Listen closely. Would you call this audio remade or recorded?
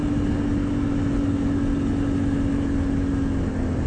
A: recorded